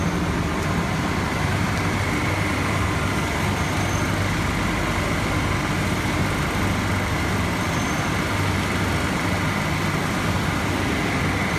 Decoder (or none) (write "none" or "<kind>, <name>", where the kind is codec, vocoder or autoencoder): none